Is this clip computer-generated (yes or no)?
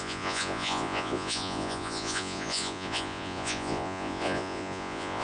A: yes